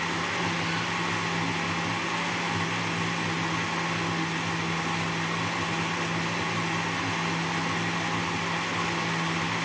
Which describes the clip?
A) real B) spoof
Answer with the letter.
A